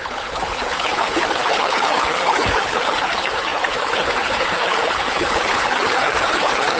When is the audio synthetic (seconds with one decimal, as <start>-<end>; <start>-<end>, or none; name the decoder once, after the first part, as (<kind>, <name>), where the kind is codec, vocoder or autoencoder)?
0.0-6.8 (codec, HILCodec)